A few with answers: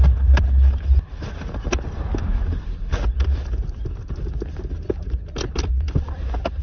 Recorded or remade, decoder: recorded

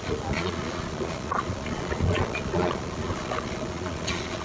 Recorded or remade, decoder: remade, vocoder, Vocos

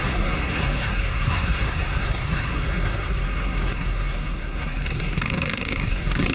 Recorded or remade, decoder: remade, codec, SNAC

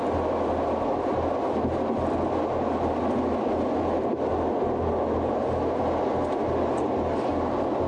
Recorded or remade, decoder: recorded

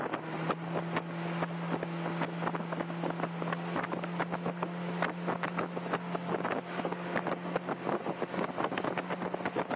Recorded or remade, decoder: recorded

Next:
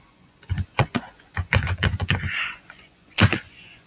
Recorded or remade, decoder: remade, vocoder, Vocos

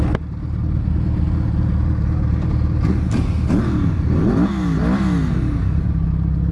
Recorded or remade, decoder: recorded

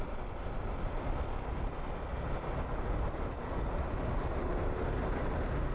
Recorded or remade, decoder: recorded